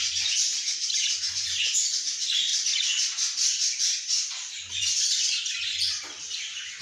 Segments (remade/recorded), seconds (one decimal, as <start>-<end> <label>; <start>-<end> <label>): 0.0-6.8 recorded